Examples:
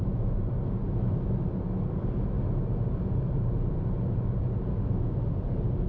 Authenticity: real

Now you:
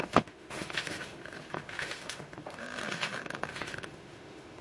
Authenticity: fake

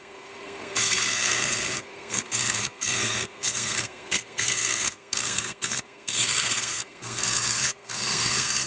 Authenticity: fake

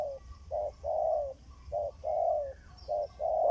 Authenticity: real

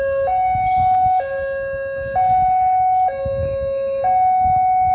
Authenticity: real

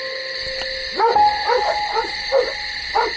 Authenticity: real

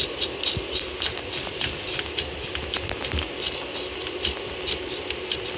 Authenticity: real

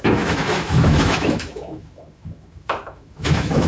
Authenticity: fake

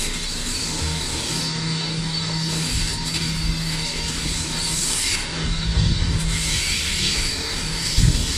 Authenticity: fake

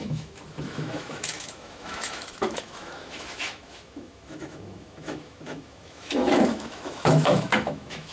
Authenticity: fake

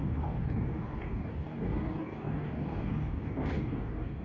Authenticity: fake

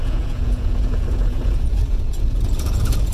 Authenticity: fake